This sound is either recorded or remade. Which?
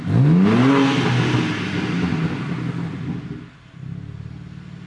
recorded